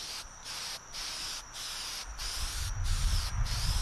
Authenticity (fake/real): real